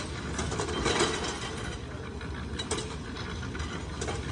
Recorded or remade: recorded